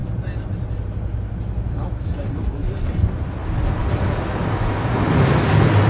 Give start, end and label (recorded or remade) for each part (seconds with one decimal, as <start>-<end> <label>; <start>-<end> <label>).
0.0-5.9 recorded